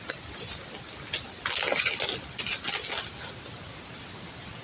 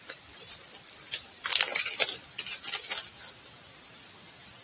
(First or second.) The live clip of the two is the first